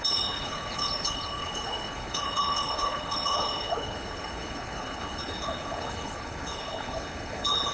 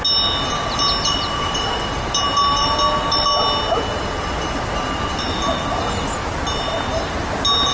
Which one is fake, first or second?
first